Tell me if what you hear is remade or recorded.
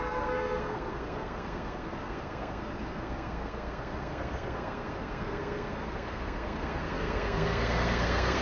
remade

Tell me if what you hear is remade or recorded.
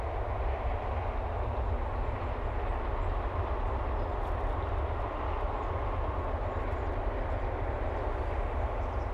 recorded